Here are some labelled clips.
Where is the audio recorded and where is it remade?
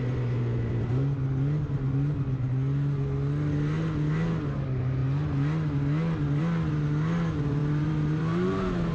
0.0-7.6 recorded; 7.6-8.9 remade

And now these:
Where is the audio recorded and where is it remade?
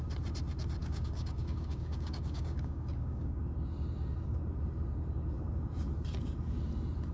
0.0-0.8 recorded; 0.8-3.4 remade; 3.4-7.1 recorded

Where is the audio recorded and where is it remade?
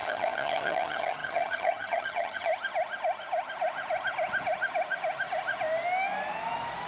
0.0-2.5 remade; 2.5-6.9 recorded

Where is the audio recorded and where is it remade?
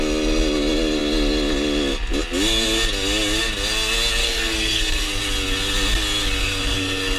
0.0-4.2 recorded; 4.2-5.2 remade; 5.2-6.4 recorded; 6.4-7.2 remade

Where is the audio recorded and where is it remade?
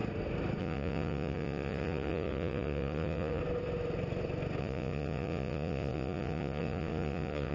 0.0-0.6 recorded; 0.6-3.4 remade; 3.4-4.6 recorded; 4.6-7.5 remade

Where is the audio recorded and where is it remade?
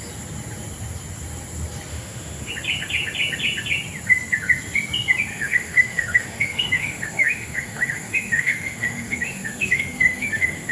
0.0-1.9 recorded; 1.9-2.5 remade; 2.5-5.3 recorded; 5.3-10.7 remade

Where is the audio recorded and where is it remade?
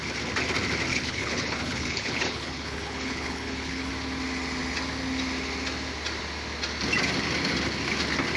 0.0-0.9 recorded; 0.9-3.9 remade; 3.9-8.4 recorded